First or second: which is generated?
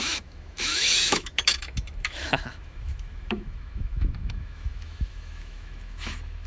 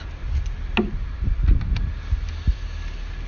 first